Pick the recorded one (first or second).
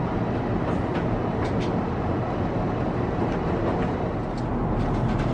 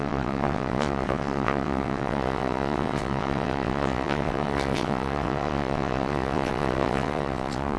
first